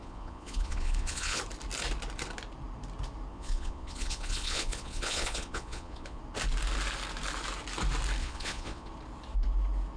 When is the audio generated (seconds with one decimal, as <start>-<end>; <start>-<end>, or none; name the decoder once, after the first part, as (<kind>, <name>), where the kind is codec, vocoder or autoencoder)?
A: 0.0-1.4 (vocoder, Vocos); 3.3-6.2; 8.2-8.9